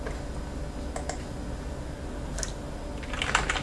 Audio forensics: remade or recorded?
recorded